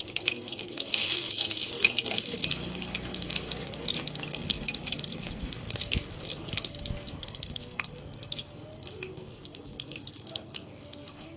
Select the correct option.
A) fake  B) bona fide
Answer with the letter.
A